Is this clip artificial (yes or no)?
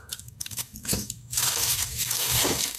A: yes